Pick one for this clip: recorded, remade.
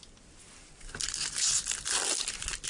recorded